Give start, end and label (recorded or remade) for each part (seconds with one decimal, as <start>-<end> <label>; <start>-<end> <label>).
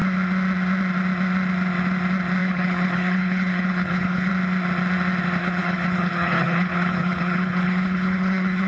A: 0.0-2.4 recorded; 2.4-4.3 remade; 4.3-5.4 recorded; 5.4-8.7 remade